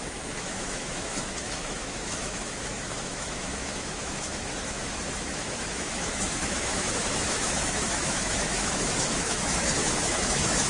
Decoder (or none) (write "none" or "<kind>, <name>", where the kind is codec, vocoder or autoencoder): autoencoder, DAC-VAE